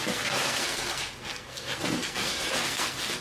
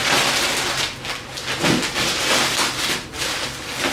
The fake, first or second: first